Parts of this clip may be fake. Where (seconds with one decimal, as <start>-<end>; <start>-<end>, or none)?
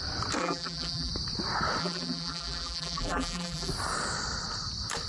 0.4-1.1; 1.8-3.7